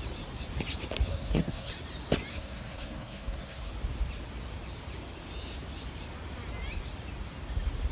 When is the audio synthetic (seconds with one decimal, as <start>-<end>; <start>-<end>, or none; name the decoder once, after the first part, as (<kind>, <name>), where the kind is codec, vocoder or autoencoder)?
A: 1.1-1.7 (codec, SNAC); 2.3-3.7